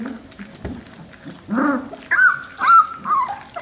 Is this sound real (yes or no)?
yes